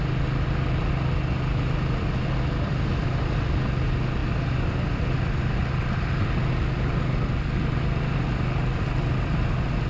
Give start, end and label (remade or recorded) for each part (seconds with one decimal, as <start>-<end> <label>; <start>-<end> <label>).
0.0-9.9 recorded